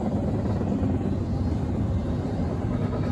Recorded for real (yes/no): yes